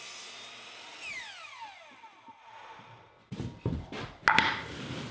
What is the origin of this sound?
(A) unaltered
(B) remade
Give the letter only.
A